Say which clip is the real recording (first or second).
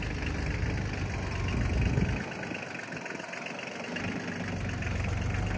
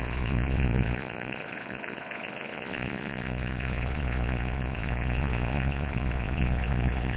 first